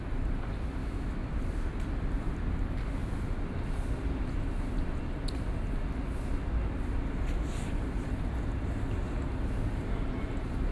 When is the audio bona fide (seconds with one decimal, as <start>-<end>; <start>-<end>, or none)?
0.0-0.8; 1.3-10.7